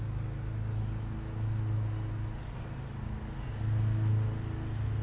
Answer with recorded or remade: recorded